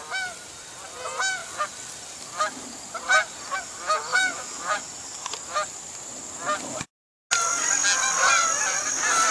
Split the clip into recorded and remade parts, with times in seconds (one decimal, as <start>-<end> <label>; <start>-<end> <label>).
0.0-4.1 recorded; 4.1-4.8 remade; 4.8-9.3 recorded